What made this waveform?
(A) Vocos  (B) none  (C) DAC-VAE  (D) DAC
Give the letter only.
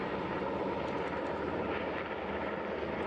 B